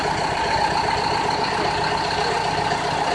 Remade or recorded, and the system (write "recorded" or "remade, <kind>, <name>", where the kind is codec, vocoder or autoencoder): recorded